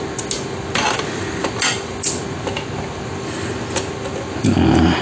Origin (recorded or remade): recorded